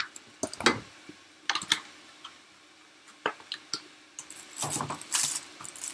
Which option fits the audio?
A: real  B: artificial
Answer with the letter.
A